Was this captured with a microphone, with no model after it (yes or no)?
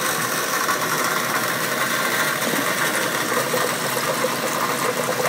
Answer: no